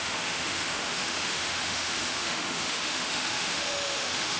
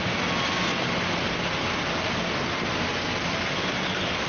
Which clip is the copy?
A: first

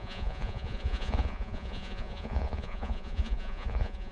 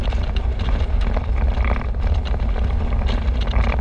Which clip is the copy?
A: first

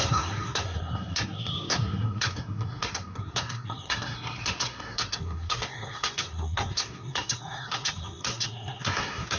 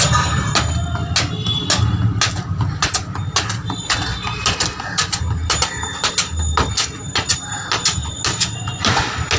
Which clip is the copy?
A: first